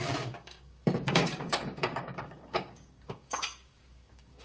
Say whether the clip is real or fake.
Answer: fake